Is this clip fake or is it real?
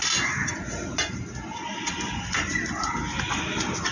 real